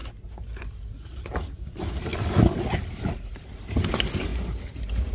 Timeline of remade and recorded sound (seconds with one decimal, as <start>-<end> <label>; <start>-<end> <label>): 0.0-4.3 recorded; 4.3-5.1 remade